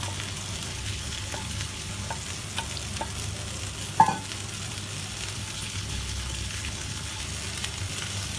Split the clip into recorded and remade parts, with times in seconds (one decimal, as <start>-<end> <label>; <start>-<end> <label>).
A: 0.0-0.7 recorded; 0.7-2.1 remade; 2.1-5.4 recorded; 5.4-7.2 remade; 7.2-8.4 recorded